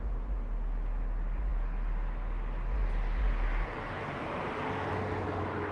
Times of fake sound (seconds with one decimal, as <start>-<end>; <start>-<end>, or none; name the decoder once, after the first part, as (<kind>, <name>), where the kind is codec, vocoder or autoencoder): none